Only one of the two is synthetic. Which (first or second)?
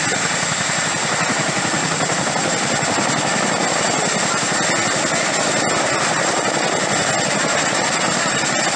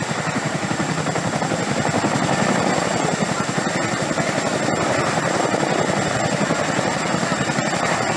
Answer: second